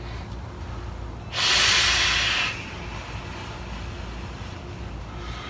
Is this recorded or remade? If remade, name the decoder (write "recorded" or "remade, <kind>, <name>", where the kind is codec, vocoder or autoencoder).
recorded